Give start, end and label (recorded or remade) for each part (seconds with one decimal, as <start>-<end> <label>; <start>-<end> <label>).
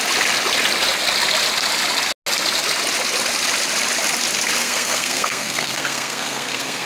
0.0-4.6 recorded; 4.6-6.9 remade